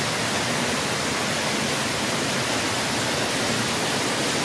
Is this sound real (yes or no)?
yes